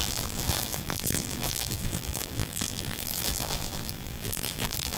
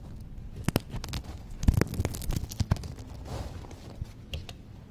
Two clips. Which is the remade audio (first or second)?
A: first